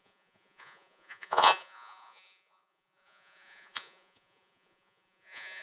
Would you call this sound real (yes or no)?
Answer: no